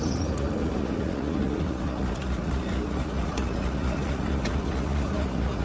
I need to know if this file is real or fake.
fake